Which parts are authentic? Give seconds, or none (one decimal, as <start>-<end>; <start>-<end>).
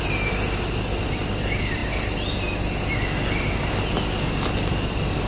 0.0-5.3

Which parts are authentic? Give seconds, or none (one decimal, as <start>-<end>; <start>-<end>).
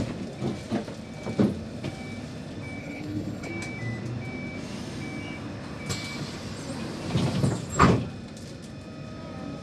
0.0-2.8; 3.5-9.6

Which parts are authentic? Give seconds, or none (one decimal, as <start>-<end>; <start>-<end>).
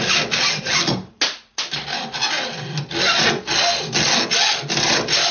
0.0-5.3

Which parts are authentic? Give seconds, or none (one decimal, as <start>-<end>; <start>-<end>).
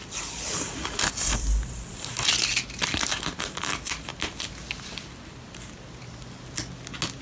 0.0-7.2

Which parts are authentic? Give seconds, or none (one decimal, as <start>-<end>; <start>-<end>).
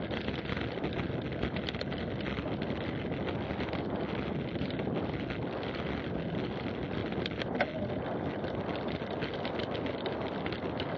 0.0-11.0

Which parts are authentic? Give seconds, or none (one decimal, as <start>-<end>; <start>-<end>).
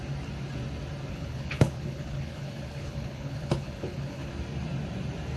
0.0-1.1; 4.3-5.4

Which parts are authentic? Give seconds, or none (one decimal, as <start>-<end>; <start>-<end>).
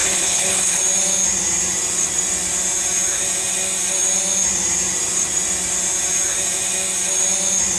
0.8-7.8